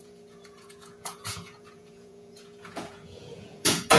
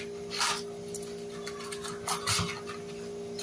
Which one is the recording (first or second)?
second